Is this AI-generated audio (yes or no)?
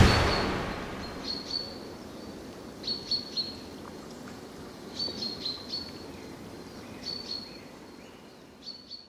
no